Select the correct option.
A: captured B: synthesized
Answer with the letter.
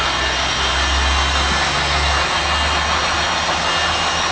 A